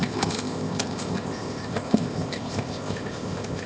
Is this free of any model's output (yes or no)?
no